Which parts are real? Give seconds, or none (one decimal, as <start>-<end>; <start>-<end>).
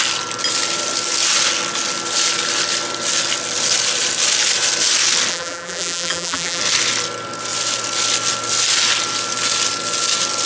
0.0-5.3; 6.6-10.5